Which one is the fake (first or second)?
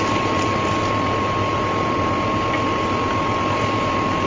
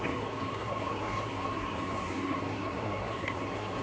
second